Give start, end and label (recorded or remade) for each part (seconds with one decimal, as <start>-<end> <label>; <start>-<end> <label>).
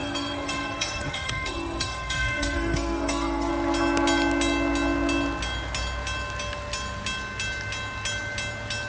0.0-3.5 remade; 3.5-8.9 recorded